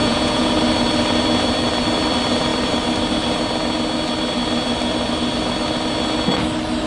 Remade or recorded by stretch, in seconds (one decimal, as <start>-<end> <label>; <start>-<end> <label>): 0.0-0.5 remade; 0.5-6.9 recorded